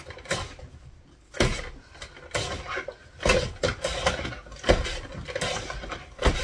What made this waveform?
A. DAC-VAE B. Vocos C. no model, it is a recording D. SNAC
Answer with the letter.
C